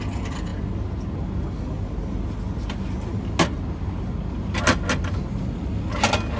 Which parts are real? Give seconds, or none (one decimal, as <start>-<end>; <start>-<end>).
0.0-6.4